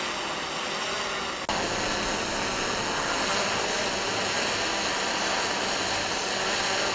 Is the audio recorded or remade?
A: recorded